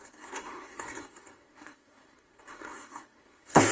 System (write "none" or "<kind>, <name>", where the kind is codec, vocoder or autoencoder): codec, SNAC